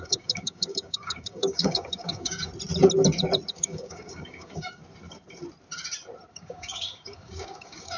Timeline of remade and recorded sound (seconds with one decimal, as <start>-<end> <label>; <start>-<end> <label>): 0.0-2.5 remade; 2.5-3.5 recorded; 3.5-4.8 remade; 4.8-6.3 recorded; 6.3-8.0 remade